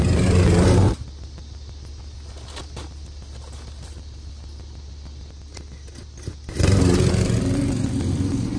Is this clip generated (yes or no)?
no